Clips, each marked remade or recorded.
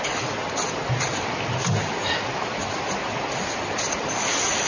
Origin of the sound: recorded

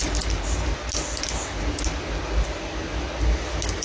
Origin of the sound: recorded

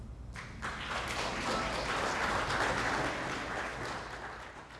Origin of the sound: recorded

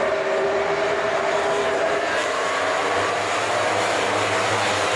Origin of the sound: remade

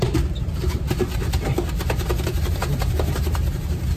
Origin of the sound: recorded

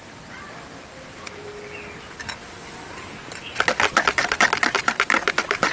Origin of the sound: recorded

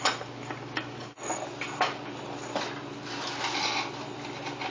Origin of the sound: recorded